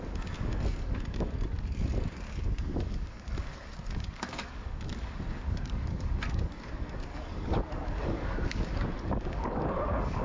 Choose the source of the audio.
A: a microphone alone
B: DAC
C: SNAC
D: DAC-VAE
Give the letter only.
B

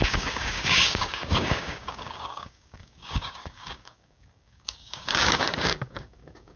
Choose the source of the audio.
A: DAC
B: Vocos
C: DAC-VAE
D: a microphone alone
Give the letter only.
A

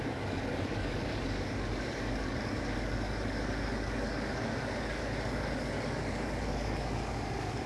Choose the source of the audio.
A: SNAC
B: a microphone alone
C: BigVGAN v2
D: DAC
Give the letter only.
D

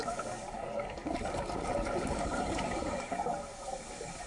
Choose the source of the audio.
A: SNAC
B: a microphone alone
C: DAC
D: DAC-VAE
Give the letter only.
C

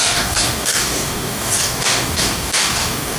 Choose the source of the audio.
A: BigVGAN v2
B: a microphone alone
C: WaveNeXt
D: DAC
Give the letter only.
D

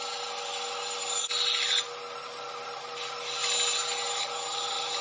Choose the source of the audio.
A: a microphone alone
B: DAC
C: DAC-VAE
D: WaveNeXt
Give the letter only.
A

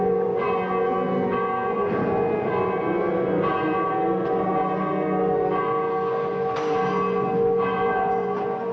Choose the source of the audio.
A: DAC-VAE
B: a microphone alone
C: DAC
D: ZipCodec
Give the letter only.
B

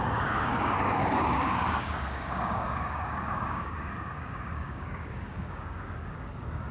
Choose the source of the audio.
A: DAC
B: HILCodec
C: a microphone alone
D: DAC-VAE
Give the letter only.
A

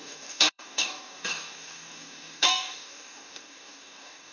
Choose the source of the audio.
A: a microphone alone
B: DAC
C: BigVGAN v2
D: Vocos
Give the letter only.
B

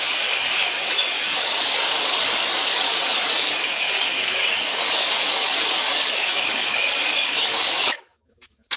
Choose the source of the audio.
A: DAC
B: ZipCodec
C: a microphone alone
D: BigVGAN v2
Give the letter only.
A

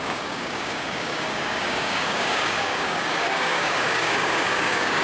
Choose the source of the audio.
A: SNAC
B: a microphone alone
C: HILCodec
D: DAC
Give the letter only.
D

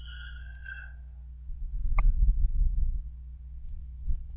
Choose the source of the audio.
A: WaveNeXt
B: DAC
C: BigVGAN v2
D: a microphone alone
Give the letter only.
D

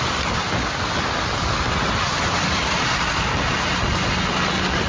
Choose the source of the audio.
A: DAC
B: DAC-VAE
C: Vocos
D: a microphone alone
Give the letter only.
D